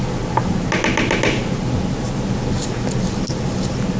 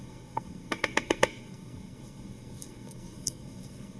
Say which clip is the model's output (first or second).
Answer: second